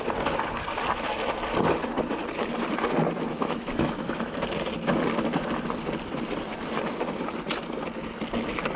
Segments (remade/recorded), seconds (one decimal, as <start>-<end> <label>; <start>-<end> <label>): 0.0-3.3 recorded; 3.3-4.4 remade; 4.4-8.8 recorded